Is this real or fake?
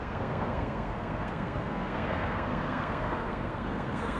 fake